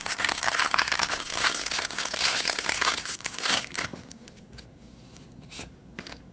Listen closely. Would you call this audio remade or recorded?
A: remade